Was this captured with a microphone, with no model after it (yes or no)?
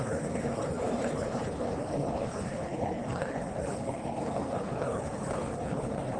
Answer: no